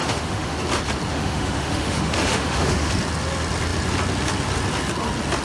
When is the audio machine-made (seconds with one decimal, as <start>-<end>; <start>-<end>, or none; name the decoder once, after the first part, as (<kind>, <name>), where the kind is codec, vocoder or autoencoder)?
0.0-0.6 (autoencoder, DAC-VAE); 1.1-2.9